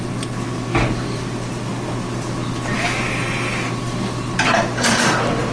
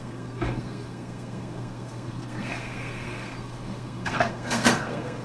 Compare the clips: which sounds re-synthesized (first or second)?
second